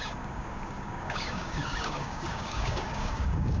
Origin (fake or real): fake